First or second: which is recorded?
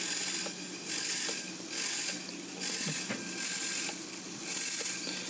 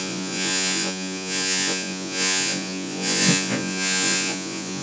first